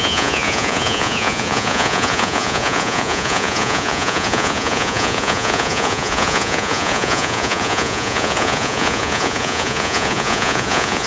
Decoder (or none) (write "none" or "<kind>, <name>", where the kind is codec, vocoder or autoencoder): vocoder, Vocos